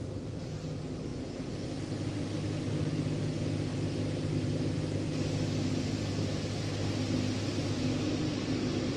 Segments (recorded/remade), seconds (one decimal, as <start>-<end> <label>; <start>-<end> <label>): 0.0-9.0 recorded